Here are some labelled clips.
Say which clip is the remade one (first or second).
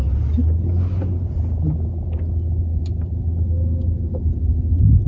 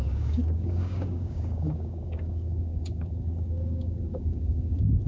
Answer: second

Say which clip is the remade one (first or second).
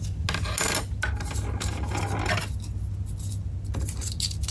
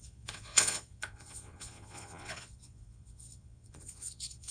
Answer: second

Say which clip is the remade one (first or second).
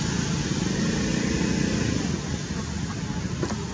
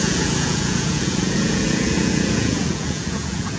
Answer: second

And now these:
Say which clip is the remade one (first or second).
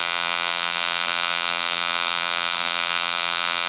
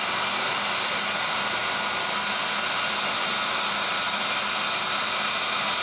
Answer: first